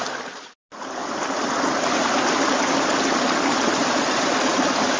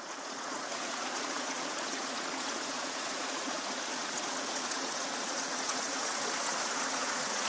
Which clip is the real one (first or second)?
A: first